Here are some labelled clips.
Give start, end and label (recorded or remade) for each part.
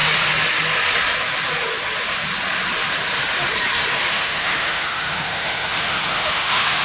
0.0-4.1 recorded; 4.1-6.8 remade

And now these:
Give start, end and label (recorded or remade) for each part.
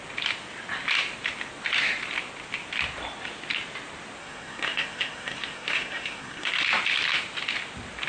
0.0-4.2 recorded; 4.2-6.5 remade; 6.5-8.1 recorded